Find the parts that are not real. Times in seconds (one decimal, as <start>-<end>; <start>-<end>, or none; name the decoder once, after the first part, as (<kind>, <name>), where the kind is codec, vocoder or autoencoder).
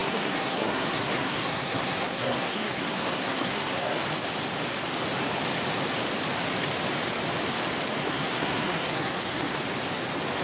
0.0-4.0 (codec, SNAC); 8.0-9.6